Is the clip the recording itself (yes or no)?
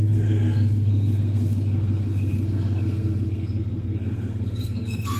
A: no